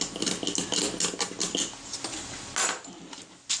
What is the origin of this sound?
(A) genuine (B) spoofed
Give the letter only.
A